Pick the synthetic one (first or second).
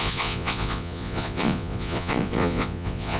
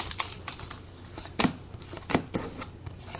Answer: first